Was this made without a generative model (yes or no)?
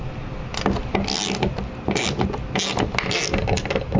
yes